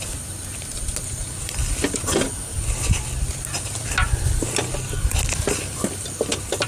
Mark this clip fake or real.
real